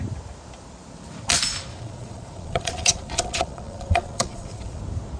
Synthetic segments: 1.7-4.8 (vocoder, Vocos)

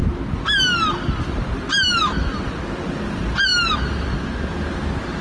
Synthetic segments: none

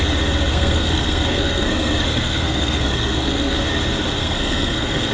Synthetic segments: 0.5-3.6 (codec, SNAC); 4.2-5.1